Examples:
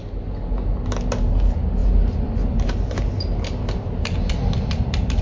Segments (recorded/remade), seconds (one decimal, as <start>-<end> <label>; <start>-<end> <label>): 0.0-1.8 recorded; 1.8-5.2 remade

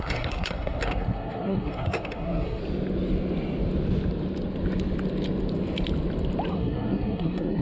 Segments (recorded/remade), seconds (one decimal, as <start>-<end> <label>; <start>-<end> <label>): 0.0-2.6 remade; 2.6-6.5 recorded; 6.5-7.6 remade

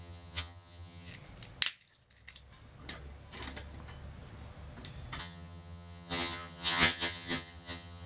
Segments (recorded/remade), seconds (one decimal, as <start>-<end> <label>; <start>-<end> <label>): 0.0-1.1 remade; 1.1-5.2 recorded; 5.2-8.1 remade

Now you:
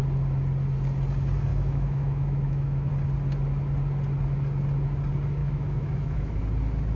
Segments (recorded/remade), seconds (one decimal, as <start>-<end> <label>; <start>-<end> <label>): 0.0-1.5 recorded; 1.5-2.9 remade; 2.9-5.4 recorded; 5.4-6.4 remade; 6.4-7.0 recorded

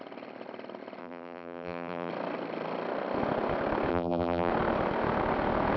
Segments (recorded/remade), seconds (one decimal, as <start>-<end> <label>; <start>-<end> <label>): 0.0-1.0 recorded; 1.0-2.1 remade; 2.1-3.9 recorded; 3.9-4.5 remade; 4.5-5.8 recorded